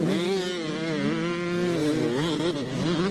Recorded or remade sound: recorded